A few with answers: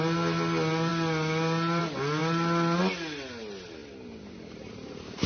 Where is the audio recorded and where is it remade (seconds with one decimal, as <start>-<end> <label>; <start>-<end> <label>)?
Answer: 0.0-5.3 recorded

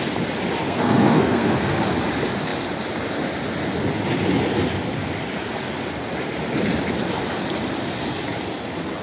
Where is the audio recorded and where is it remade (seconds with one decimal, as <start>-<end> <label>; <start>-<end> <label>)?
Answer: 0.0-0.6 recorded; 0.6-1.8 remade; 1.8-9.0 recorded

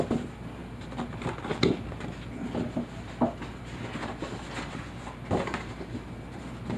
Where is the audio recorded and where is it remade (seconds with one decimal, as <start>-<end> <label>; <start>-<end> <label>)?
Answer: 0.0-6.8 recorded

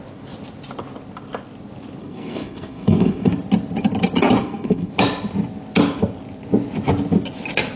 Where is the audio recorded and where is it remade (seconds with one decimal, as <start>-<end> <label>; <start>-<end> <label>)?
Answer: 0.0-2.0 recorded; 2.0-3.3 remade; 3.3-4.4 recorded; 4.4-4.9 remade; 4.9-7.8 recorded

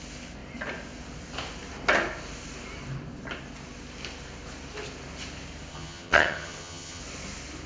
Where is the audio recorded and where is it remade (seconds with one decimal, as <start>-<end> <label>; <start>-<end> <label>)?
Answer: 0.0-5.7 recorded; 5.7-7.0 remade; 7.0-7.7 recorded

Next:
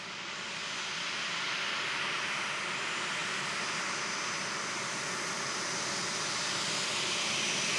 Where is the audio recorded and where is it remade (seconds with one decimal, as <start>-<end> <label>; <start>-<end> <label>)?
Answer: 0.0-7.8 recorded

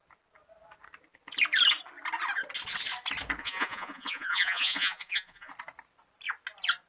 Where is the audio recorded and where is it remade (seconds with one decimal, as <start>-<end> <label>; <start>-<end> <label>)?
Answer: 0.0-3.4 recorded; 3.4-5.5 remade; 5.5-6.9 recorded

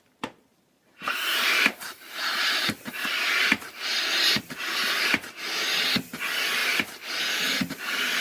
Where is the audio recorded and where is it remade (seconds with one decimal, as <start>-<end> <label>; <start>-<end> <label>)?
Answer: 0.0-0.5 recorded; 0.5-4.4 remade; 4.4-6.6 recorded; 6.6-7.2 remade; 7.2-8.2 recorded